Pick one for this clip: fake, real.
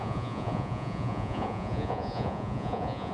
fake